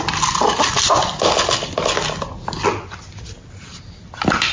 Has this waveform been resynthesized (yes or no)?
no